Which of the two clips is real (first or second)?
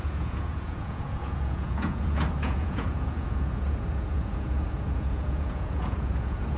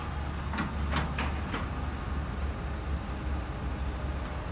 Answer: second